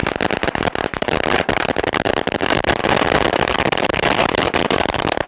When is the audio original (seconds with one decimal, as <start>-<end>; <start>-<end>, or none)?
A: 0.0-1.0; 2.8-3.3